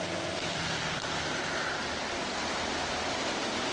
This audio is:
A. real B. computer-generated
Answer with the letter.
A